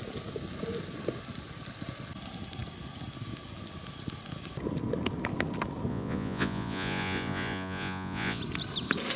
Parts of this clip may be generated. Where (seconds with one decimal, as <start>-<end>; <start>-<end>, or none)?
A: 5.9-8.4